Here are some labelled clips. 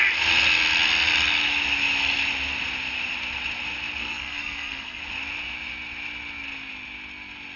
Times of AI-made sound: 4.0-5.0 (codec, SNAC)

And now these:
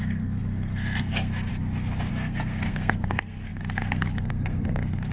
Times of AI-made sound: 0.0-1.5 (codec, SNAC); 2.1-5.1

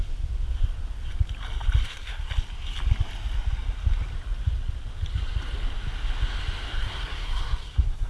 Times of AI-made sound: 1.8-2.3 (codec, SNAC); 6.7-8.1

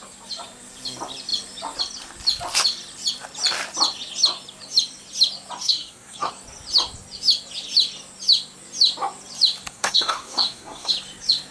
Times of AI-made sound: 5.6-6.3 (codec, SNAC); 9.7-10.9

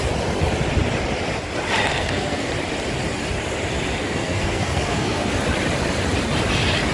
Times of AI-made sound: 1.9-2.5 (codec, SNAC); 4.0-5.3

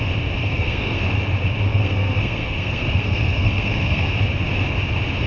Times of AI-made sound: 0.4-1.0 (codec, SNAC); 1.7-4.1

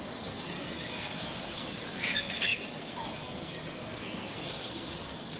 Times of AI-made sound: 0.0-5.4 (codec, SNAC)